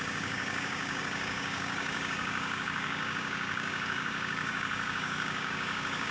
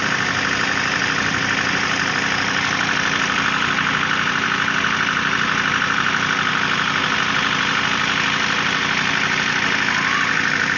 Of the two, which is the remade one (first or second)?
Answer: first